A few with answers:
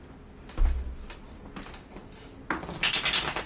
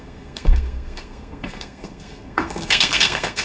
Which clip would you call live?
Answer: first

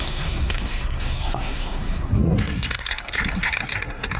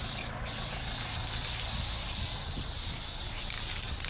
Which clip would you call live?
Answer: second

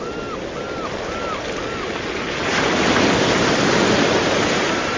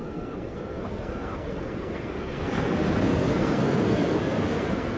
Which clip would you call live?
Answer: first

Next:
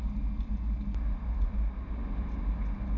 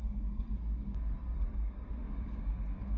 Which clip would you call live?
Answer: first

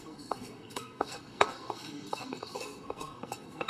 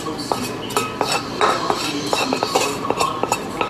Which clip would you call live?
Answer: second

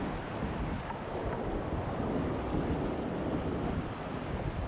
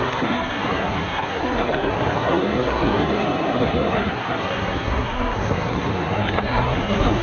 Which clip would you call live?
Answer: first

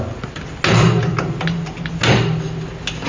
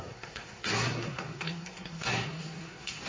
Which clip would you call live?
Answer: first